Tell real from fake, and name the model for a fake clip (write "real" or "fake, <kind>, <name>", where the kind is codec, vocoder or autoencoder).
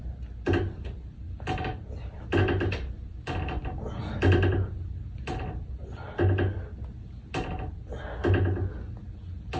real